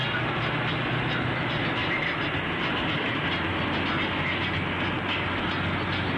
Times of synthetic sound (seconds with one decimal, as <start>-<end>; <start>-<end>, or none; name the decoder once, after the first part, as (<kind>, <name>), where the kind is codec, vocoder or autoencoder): none

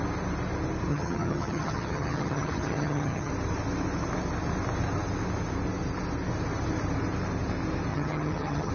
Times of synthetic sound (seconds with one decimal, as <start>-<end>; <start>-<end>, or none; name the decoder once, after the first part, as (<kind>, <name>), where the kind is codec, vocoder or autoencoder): 0.9-3.3 (vocoder, HiFi-GAN); 7.9-8.7

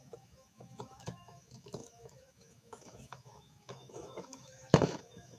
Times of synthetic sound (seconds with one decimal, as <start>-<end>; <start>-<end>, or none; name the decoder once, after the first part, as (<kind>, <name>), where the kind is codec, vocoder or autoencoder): 0.0-5.4 (autoencoder, DAC-VAE)

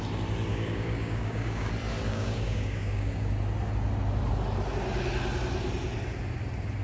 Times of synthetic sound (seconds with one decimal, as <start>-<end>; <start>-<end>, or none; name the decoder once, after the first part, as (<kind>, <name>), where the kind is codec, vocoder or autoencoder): 0.5-1.7 (codec, DAC); 2.1-3.3

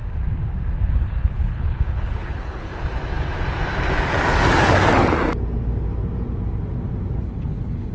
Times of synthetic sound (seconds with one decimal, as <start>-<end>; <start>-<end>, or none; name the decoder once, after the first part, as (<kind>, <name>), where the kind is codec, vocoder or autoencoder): 0.9-2.7 (codec, HILCodec); 7.2-7.9

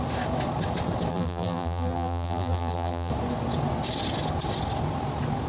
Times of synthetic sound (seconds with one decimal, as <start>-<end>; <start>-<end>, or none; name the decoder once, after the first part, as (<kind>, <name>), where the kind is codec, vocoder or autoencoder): 1.1-3.1 (vocoder, BigVGAN v2)

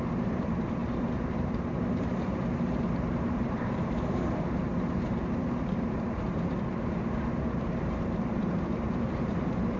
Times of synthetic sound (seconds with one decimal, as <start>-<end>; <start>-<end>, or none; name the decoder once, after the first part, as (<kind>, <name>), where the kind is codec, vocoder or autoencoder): 0.0-9.8 (vocoder, BigVGAN v2)

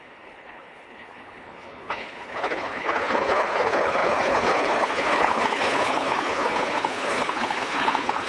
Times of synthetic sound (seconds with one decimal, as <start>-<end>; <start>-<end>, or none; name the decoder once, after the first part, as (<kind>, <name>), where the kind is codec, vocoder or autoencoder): 0.0-8.3 (codec, HILCodec)